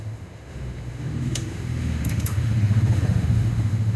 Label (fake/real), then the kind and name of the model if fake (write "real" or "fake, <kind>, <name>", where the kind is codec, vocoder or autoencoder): fake, autoencoder, DAC-VAE